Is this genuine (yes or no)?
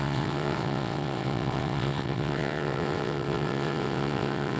no